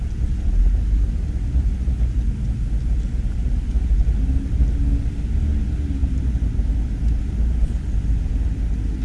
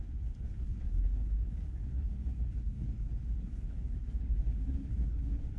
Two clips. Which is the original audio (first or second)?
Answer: first